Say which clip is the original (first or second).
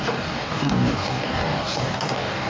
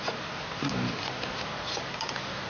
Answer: second